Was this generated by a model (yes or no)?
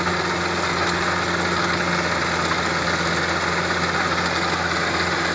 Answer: no